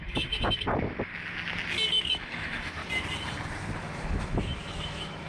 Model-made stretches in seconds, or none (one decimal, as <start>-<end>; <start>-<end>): 0.0-1.1; 1.9-2.8; 3.8-5.3